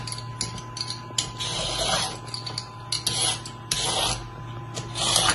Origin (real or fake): real